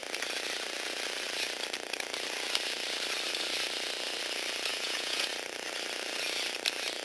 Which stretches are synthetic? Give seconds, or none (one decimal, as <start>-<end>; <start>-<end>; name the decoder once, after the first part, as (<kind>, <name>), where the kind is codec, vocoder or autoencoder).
4.7-5.3 (vocoder, Vocos)

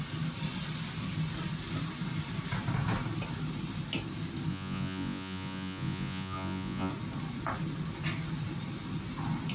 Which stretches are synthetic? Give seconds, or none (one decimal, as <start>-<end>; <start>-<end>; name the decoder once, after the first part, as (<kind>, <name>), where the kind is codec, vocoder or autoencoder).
4.5-6.9 (vocoder, Vocos)

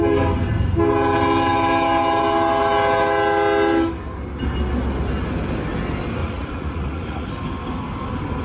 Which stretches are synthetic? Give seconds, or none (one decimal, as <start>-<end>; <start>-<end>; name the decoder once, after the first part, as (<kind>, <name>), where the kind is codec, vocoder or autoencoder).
6.2-7.3 (vocoder, Vocos)

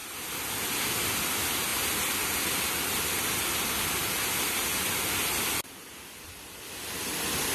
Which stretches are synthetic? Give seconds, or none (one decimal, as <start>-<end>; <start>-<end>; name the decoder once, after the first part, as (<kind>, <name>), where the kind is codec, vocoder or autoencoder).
none

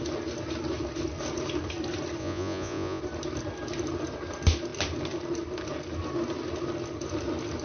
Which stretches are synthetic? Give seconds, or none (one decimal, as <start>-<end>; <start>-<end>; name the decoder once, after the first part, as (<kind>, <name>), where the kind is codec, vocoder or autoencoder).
2.2-3.0 (vocoder, Vocos)